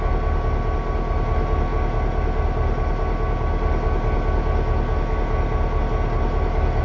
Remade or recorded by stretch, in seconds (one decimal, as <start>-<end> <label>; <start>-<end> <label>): 0.0-6.8 recorded